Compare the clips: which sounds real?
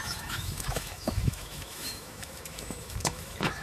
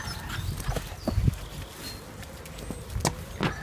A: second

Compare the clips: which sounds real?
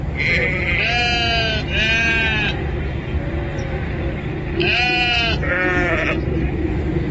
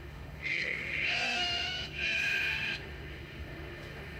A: first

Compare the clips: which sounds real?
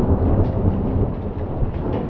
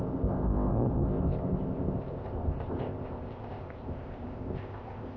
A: first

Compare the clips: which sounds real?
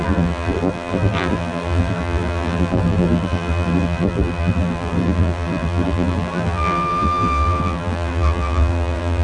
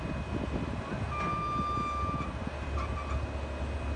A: second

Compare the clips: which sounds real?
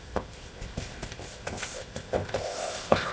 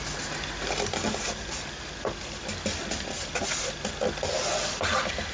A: second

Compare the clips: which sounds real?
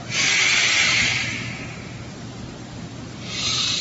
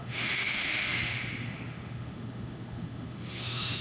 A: first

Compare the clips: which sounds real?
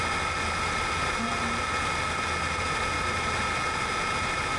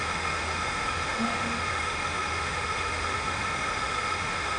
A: first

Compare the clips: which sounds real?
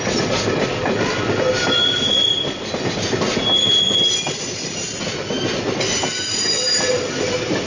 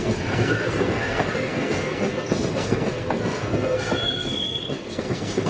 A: first